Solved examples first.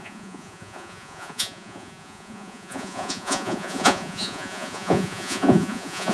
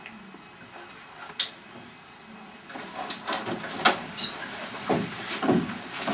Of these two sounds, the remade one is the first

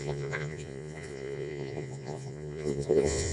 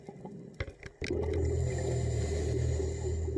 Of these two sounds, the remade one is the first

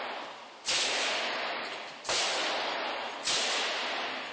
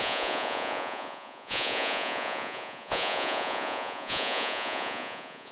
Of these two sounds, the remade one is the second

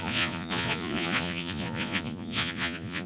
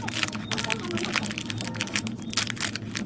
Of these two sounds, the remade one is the first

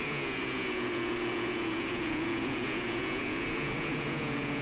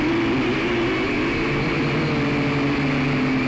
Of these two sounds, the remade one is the first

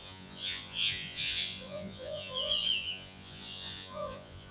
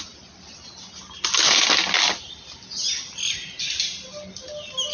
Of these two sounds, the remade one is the first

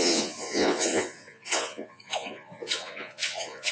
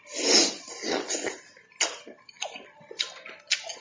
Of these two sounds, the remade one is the first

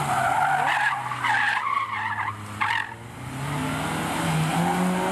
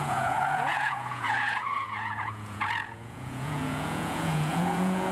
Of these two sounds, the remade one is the second